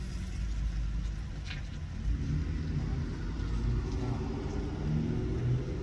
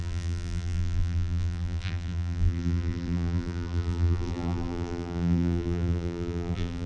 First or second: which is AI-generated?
second